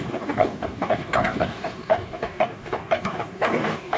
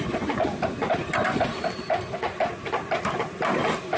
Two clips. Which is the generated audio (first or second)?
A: first